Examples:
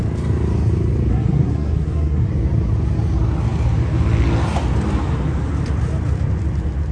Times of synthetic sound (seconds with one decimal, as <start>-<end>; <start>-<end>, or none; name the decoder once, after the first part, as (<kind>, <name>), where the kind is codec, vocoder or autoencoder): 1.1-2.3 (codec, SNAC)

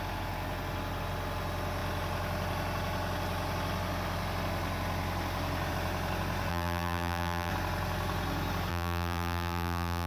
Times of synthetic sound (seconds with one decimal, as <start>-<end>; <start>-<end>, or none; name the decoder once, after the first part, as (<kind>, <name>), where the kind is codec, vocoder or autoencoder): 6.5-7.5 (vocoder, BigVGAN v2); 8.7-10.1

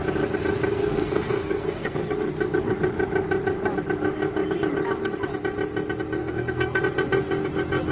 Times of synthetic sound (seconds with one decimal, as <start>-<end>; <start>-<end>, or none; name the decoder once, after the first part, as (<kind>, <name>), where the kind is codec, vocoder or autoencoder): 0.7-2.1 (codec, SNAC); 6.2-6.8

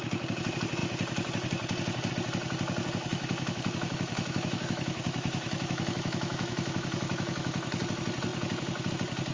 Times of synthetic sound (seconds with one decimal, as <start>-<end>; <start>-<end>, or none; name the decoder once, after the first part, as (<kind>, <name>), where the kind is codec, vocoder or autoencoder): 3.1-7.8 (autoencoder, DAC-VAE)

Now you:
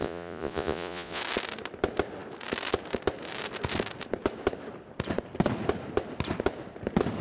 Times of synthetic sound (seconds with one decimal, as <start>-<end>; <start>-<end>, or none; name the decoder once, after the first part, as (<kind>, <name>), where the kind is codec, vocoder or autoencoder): 0.0-1.2 (vocoder, Vocos)

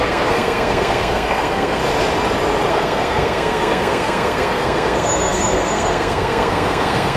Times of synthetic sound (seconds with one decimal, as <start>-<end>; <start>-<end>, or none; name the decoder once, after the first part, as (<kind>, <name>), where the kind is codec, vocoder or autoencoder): 0.0-1.8 (codec, SNAC); 2.7-7.2

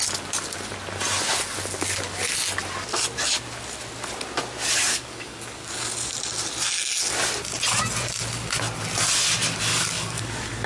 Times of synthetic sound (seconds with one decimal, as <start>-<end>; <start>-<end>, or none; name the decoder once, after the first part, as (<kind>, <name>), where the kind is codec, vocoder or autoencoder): 4.9-5.7 (codec, DAC); 9.7-10.7

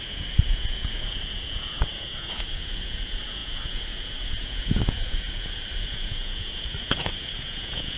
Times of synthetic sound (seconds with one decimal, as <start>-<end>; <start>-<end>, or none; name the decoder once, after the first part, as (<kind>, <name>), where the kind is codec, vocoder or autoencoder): 0.0-8.0 (vocoder, Vocos)